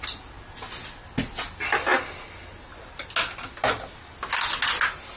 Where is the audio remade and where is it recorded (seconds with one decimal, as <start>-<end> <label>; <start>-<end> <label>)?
0.0-5.2 recorded